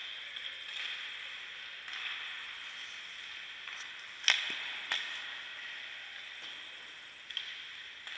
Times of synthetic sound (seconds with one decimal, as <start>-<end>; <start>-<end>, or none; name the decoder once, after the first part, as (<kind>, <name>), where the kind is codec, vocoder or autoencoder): none